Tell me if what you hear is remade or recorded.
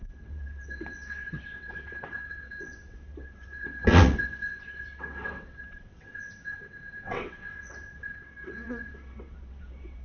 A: remade